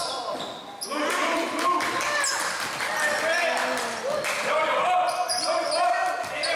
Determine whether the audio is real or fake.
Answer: real